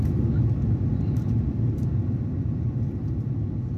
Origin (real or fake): real